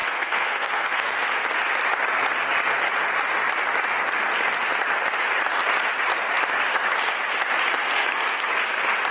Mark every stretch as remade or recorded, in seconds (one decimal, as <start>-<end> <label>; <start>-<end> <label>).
0.0-1.2 remade; 1.2-7.8 recorded; 7.8-8.5 remade; 8.5-9.1 recorded